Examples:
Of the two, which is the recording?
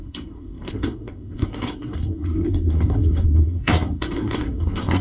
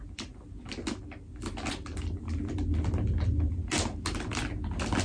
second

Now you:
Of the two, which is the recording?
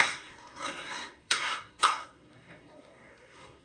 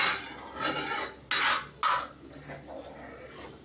second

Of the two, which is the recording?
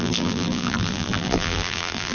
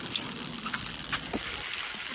second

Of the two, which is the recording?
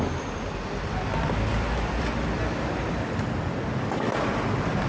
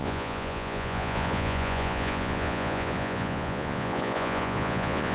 first